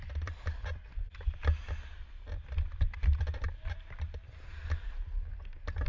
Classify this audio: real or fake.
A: real